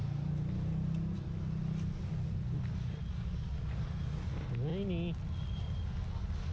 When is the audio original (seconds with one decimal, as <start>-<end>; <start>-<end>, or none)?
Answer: 0.0-6.5